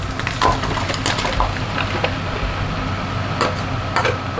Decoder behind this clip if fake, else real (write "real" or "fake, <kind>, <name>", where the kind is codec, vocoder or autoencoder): real